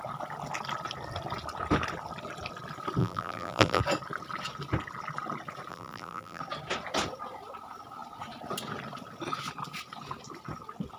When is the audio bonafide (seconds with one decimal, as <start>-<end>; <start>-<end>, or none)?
0.0-3.0; 3.8-5.7; 6.4-11.0